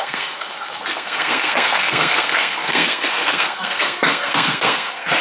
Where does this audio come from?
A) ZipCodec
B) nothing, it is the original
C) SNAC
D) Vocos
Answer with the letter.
C